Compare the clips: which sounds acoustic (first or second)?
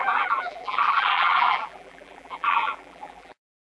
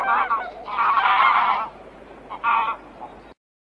second